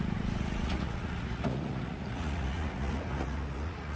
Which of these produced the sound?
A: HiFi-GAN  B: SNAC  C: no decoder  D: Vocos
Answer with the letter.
D